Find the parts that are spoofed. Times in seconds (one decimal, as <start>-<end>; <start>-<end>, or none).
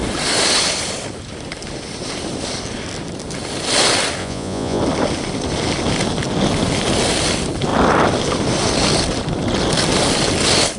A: 4.2-4.8